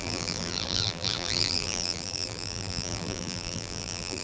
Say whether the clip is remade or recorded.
remade